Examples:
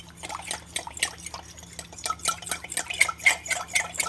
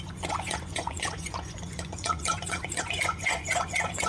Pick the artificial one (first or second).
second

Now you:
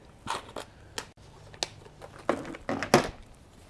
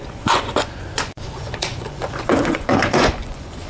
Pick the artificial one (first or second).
second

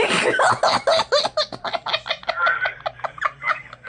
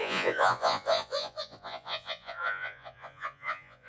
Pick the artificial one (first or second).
second